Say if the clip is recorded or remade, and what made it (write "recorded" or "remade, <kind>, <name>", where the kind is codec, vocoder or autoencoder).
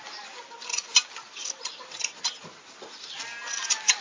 recorded